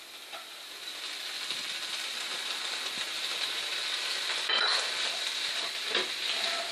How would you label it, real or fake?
real